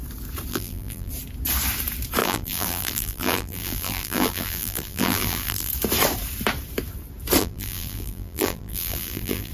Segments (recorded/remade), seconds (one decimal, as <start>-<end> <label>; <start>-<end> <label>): 0.0-0.5 recorded; 0.5-1.1 remade; 1.1-2.2 recorded; 2.2-5.7 remade; 5.7-7.4 recorded; 7.4-9.5 remade